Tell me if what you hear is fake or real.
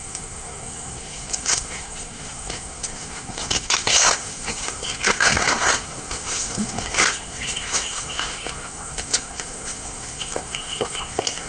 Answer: fake